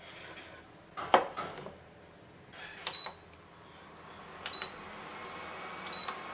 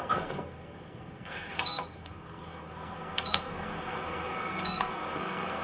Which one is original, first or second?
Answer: first